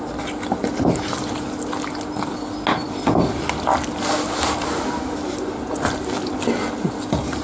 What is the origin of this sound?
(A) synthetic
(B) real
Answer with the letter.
B